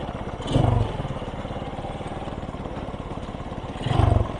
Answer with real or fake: real